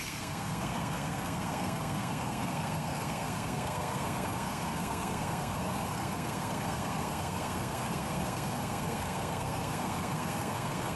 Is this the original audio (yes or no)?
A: no